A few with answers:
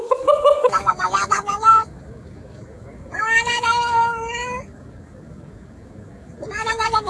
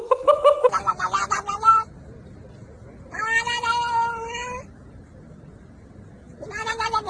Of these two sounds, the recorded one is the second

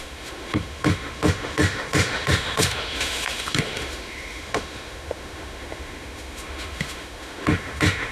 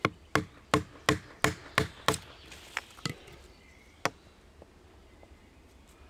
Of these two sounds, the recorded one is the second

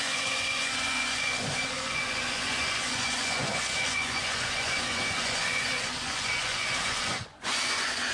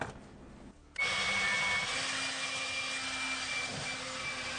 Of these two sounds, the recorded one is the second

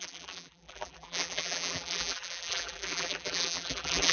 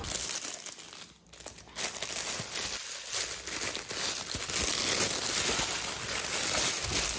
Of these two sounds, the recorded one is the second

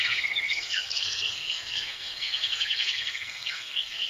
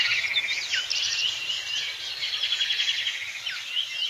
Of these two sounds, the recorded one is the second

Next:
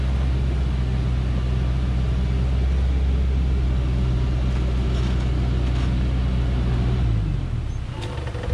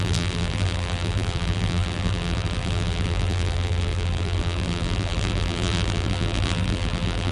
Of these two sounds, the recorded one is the first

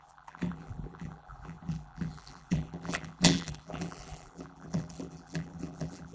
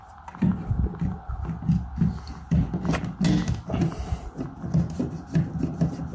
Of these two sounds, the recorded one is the second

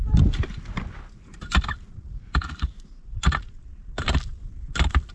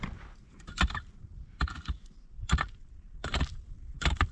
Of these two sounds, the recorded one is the first